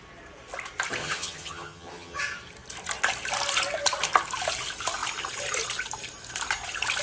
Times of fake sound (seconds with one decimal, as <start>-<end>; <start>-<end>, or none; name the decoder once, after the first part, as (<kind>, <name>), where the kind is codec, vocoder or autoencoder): 1.0-2.2 (vocoder, HiFi-GAN)